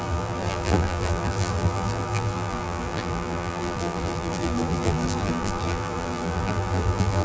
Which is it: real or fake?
fake